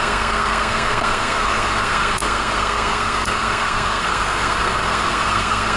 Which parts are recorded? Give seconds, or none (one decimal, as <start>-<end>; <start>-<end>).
none